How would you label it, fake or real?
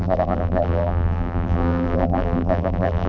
fake